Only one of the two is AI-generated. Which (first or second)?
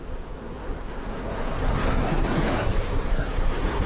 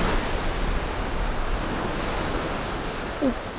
first